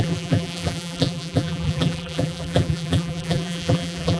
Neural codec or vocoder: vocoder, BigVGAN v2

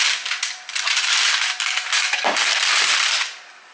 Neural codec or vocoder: none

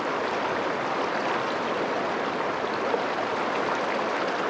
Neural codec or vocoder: none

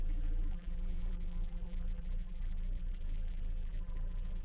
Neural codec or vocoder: vocoder, BigVGAN v2